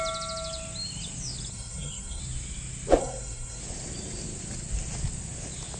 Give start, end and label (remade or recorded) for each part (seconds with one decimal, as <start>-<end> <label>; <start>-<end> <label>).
0.0-1.5 recorded; 1.5-2.2 remade; 2.2-3.0 recorded; 3.0-3.6 remade; 3.6-5.8 recorded